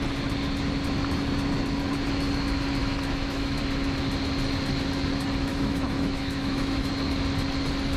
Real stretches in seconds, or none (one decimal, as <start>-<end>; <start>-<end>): 0.0-2.8; 3.6-5.5; 6.9-8.0